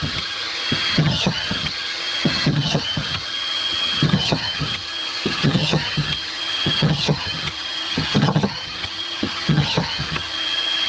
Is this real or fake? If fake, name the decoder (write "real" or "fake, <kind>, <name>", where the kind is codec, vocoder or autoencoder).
fake, vocoder, HiFi-GAN